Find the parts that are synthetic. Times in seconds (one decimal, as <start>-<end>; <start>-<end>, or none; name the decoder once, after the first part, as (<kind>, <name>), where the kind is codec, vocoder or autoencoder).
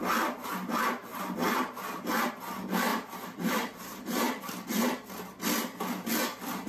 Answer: 1.1-2.3 (vocoder, BigVGAN v2); 2.9-4.5